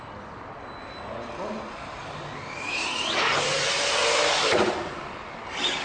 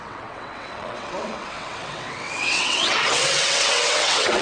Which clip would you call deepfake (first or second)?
second